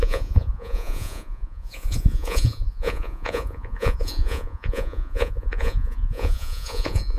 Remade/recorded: remade